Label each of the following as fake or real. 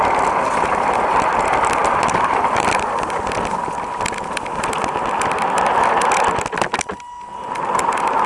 real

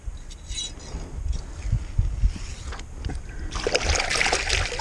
real